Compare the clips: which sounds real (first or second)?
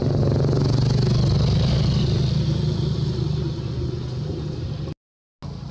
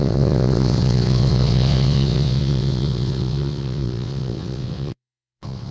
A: first